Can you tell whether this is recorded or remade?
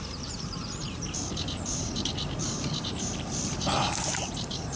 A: remade